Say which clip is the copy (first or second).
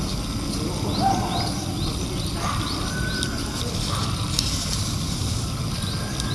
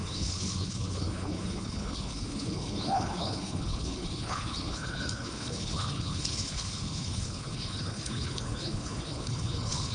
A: second